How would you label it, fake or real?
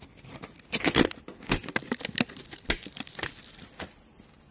real